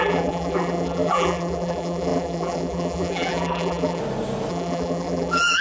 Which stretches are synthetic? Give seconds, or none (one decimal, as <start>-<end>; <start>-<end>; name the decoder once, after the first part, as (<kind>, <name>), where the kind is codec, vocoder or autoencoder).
0.0-4.0 (vocoder, BigVGAN v2); 4.5-5.6